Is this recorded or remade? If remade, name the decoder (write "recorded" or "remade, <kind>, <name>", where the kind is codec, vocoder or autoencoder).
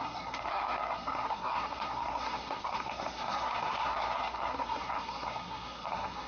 remade, codec, SNAC